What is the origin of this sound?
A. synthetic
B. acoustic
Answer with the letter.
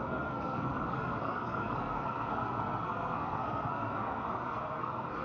A